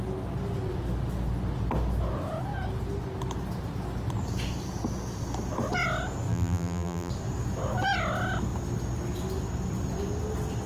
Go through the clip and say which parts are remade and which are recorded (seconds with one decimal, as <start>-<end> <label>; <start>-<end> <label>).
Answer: 0.0-6.3 recorded; 6.3-7.1 remade; 7.1-10.7 recorded